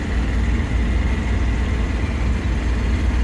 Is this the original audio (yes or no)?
yes